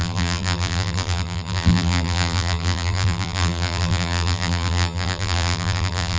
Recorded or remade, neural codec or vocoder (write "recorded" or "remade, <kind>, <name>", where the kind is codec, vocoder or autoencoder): remade, vocoder, BigVGAN v2